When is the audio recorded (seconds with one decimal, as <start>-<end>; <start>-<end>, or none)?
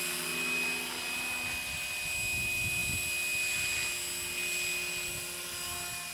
0.0-6.1